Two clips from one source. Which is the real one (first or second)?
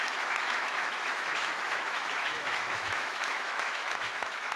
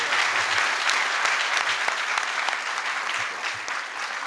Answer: second